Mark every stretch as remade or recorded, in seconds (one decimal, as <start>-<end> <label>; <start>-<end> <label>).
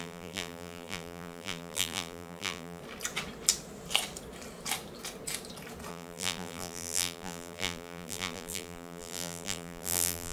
0.0-2.8 remade; 2.8-5.9 recorded; 5.9-10.3 remade